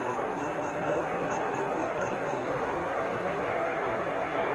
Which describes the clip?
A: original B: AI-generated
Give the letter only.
B